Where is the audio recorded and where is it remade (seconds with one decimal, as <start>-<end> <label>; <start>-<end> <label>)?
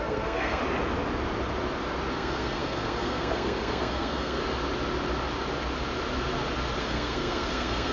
0.0-0.6 remade; 0.6-2.1 recorded; 2.1-4.4 remade; 4.4-6.8 recorded; 6.8-7.9 remade